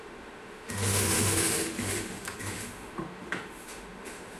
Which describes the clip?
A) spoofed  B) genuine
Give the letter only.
A